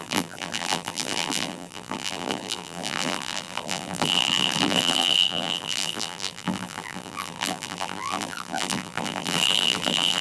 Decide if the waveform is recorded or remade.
remade